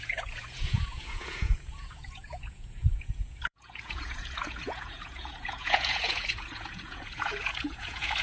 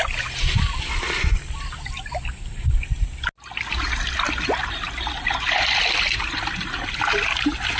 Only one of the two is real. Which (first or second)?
second